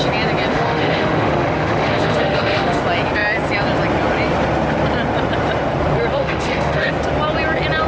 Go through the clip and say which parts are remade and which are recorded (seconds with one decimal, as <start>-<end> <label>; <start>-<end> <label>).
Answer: 0.0-0.5 recorded; 0.5-2.8 remade; 2.8-6.2 recorded; 6.2-6.9 remade; 6.9-7.9 recorded